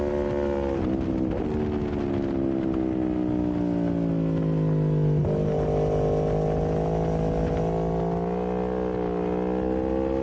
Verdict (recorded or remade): recorded